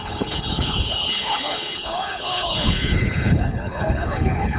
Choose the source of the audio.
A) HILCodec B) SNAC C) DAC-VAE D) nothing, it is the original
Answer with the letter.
A